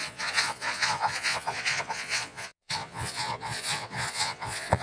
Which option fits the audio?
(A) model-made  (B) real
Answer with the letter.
A